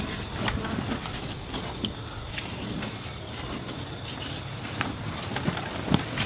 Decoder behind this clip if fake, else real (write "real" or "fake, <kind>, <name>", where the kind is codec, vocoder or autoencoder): real